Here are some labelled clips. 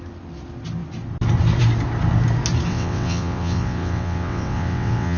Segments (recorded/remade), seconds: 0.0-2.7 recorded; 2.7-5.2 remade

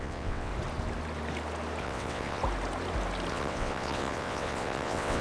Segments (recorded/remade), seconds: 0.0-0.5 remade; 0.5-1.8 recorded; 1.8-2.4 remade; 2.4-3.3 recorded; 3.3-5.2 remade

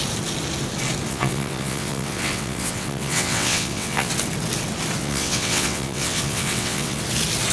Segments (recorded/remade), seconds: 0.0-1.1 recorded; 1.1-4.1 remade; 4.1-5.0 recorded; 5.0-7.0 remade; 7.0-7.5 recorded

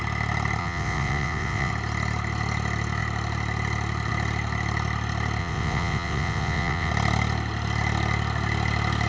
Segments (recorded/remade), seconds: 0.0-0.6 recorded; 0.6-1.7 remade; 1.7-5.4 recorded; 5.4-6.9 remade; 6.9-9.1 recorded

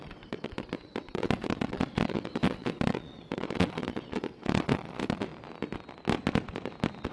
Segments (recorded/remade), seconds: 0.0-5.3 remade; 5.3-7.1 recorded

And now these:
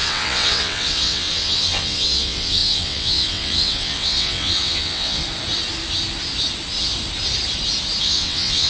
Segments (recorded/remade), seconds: 0.0-5.2 remade; 5.2-8.0 recorded; 8.0-8.7 remade